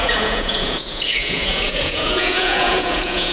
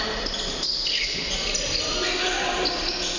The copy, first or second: first